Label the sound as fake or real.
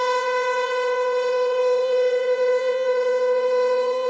fake